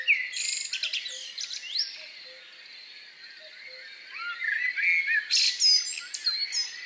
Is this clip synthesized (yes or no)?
no